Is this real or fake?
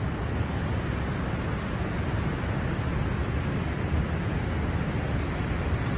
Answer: real